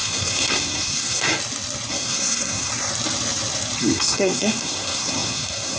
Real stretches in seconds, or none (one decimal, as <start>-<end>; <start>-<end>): 1.3-1.9; 2.7-3.8